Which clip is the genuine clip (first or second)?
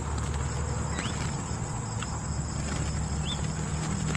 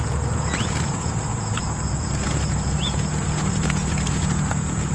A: first